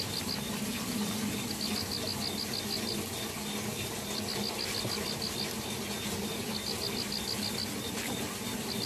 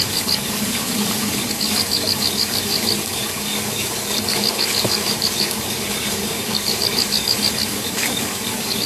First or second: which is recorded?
first